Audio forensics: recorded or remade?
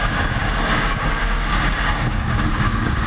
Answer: remade